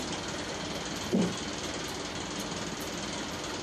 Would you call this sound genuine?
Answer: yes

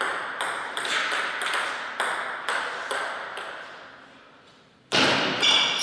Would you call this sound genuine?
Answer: yes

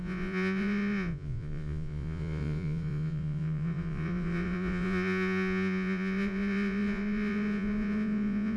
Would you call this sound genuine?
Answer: no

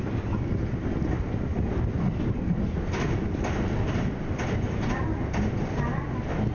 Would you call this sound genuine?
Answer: yes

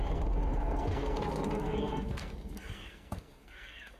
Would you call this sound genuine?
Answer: no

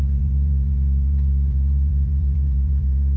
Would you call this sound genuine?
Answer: no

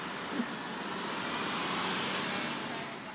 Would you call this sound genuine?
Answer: yes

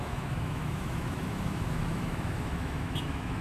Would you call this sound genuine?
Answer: no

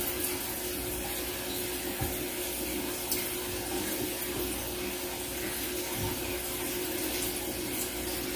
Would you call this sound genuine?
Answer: yes